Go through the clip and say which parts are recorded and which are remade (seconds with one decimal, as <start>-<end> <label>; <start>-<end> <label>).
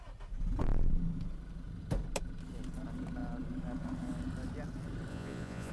0.0-5.1 recorded; 5.1-5.7 remade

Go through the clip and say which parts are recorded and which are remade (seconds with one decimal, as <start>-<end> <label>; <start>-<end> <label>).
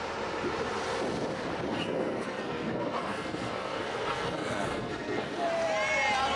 0.0-1.7 recorded; 1.7-5.5 remade; 5.5-6.4 recorded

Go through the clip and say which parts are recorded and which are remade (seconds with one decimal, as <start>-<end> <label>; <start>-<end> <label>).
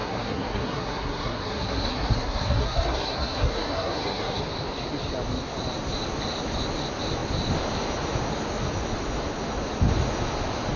0.0-4.4 remade; 4.4-10.8 recorded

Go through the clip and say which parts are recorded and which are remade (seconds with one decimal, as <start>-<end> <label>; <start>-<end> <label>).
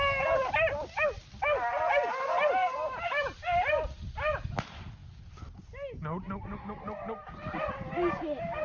0.0-8.6 recorded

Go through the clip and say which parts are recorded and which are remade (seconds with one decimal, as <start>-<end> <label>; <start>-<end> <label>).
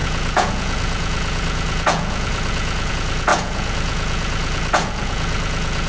0.0-5.9 remade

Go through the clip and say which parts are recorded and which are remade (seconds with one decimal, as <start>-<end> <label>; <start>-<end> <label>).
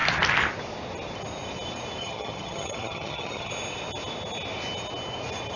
0.0-2.0 recorded; 2.0-3.5 remade; 3.5-5.6 recorded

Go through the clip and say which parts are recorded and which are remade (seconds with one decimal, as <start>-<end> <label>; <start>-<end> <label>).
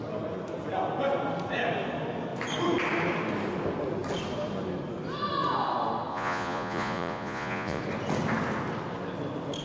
0.0-6.1 recorded; 6.1-7.8 remade; 7.8-9.6 recorded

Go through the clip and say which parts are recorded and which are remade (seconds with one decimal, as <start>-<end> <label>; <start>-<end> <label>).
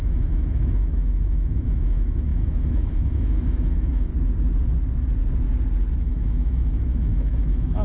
0.0-4.1 remade; 4.1-6.0 recorded; 6.0-7.8 remade